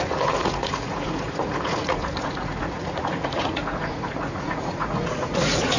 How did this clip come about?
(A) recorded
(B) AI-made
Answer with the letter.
B